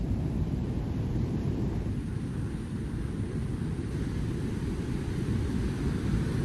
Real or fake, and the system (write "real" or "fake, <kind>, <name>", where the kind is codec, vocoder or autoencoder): real